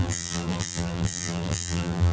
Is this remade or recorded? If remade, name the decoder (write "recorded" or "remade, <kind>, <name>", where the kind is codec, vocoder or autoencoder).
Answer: remade, vocoder, BigVGAN v2